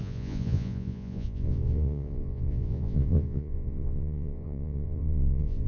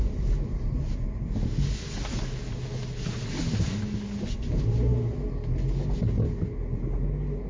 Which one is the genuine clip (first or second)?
second